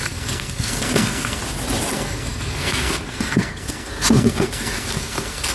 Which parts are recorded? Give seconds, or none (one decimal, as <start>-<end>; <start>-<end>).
1.4-1.9